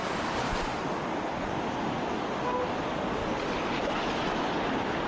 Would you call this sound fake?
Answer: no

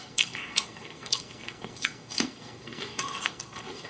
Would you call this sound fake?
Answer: yes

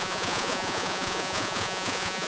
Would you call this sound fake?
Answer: yes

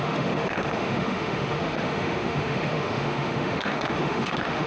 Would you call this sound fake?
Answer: yes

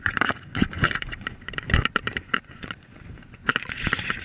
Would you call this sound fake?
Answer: yes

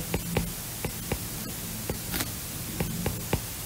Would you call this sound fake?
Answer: no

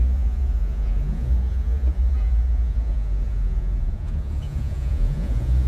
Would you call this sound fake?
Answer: yes